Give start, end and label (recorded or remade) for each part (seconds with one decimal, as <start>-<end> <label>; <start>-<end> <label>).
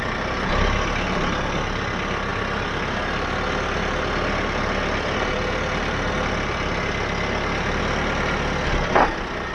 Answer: 0.0-9.5 recorded